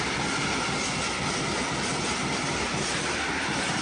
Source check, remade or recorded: recorded